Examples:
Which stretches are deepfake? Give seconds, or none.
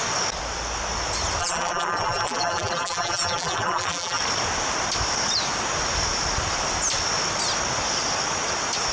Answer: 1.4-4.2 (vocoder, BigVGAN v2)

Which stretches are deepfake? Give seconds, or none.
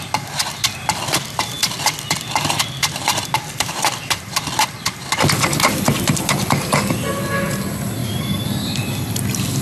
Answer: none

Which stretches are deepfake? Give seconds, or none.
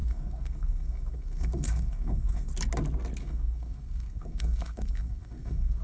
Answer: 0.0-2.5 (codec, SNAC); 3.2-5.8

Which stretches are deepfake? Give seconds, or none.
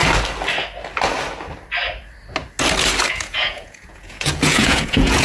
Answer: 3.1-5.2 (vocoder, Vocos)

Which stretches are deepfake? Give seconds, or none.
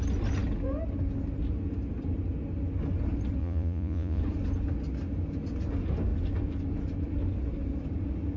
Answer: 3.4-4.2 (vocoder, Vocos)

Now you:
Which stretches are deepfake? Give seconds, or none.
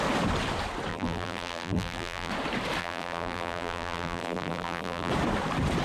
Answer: 0.9-2.3 (vocoder, BigVGAN v2); 2.8-5.1